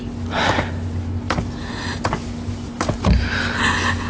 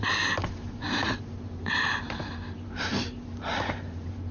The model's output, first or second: second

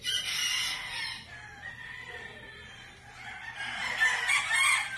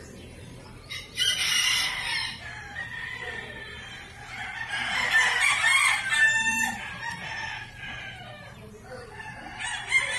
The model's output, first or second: second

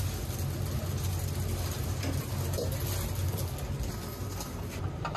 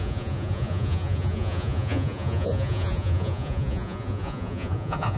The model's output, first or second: second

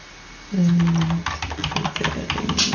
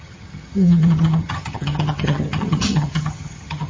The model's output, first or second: second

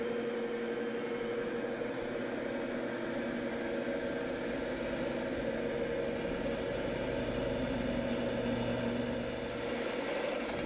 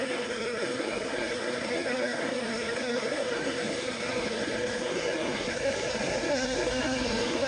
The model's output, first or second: second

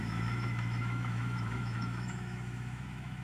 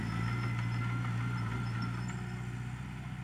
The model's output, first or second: first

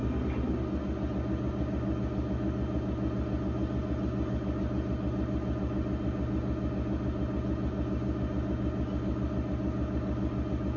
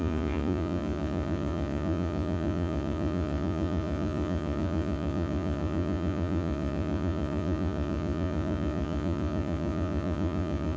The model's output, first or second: second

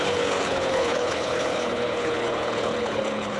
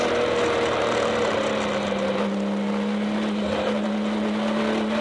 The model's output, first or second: first